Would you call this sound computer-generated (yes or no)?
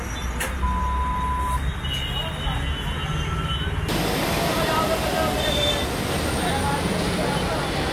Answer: no